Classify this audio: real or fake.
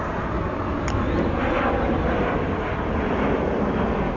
real